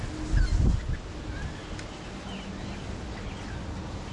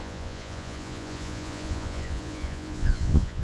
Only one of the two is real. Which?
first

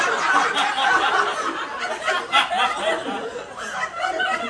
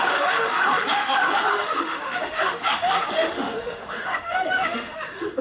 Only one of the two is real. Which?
first